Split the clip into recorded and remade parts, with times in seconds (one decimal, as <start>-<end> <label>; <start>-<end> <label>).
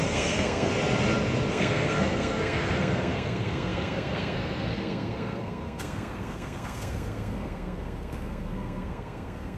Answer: 0.0-0.7 remade; 0.7-1.5 recorded; 1.5-9.6 remade